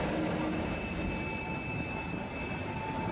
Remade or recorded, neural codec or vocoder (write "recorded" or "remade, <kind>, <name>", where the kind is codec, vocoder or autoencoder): recorded